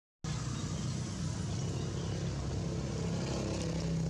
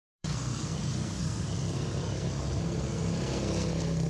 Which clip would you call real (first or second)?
first